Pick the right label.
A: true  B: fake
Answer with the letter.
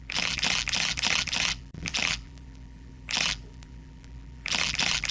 B